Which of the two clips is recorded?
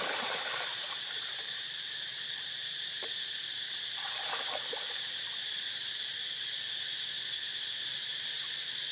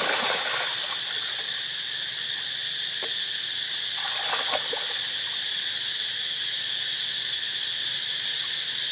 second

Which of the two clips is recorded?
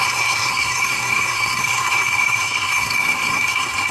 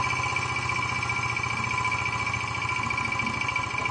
second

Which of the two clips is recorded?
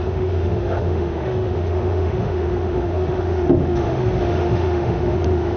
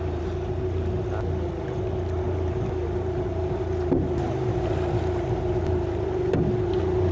second